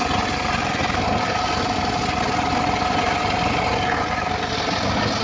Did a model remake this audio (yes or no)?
no